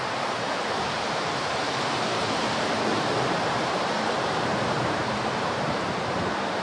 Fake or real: fake